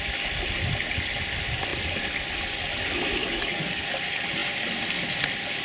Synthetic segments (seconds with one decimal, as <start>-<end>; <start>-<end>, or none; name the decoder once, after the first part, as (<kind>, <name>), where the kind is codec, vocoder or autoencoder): 3.2-3.9 (codec, DAC)

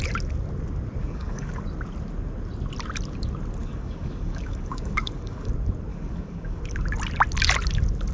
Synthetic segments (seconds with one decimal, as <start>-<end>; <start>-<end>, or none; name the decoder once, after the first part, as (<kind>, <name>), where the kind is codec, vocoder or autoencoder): 1.0-1.6 (codec, DAC); 3.6-5.5; 5.9-6.6

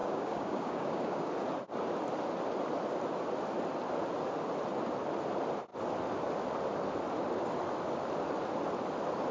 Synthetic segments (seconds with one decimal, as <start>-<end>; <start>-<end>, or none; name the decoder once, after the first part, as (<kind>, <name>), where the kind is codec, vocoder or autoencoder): 0.0-1.3 (codec, DAC)

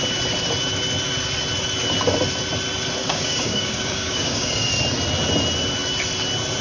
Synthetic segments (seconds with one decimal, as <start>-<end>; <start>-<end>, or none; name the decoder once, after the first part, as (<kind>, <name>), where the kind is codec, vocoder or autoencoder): 3.0-4.7 (codec, DAC)

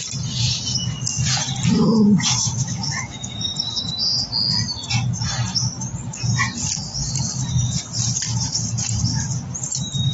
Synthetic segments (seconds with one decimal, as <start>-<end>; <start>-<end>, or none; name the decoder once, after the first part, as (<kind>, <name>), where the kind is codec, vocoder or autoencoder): 2.6-3.9 (codec, DAC)

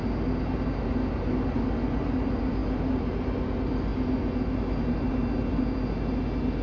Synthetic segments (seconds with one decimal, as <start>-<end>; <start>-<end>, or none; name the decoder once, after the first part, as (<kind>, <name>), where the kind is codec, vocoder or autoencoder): none

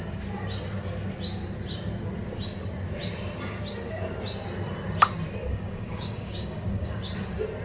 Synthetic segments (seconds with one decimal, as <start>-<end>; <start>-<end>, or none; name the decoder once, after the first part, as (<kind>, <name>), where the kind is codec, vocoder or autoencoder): 5.5-7.0 (codec, DAC)